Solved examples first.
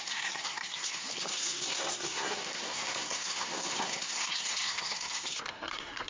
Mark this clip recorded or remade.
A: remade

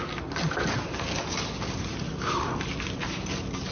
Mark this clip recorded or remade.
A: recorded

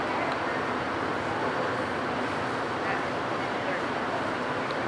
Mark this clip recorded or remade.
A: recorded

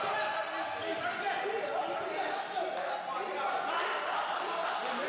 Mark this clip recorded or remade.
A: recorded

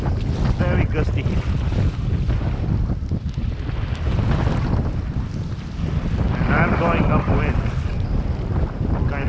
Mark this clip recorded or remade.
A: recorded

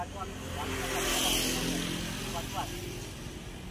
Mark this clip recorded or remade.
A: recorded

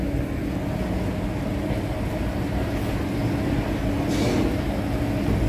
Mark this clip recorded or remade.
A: recorded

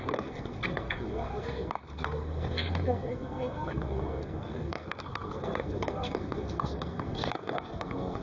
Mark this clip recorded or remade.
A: remade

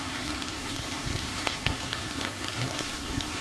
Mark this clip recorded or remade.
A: remade